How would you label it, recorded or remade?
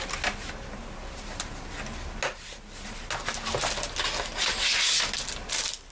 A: recorded